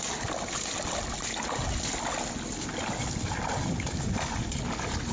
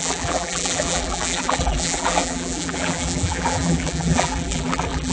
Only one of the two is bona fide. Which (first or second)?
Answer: first